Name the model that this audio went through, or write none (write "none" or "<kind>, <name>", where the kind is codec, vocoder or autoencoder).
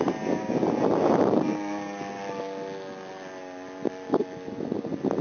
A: none